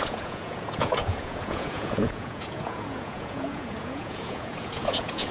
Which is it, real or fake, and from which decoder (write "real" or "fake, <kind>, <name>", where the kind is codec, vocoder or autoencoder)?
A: fake, vocoder, Vocos